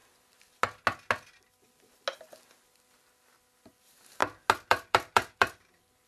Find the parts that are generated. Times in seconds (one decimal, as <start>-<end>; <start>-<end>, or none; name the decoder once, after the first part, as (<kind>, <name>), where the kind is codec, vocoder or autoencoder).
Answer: 3.7-4.2 (vocoder, BigVGAN v2); 4.7-6.1